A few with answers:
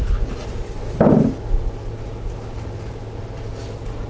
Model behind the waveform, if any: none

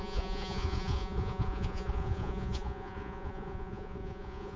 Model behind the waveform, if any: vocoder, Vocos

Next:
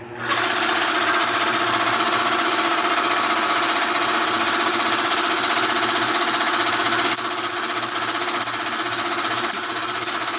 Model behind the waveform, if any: none